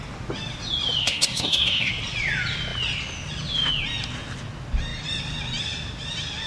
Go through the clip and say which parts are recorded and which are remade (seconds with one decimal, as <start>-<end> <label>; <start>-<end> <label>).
0.0-1.0 recorded; 1.0-1.9 remade; 1.9-6.5 recorded